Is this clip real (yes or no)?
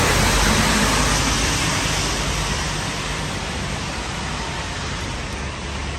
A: yes